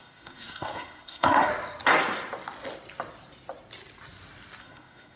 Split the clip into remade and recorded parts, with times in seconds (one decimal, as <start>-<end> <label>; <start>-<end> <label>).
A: 0.0-1.5 remade; 1.5-4.6 recorded; 4.6-5.2 remade